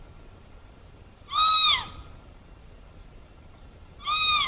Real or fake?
fake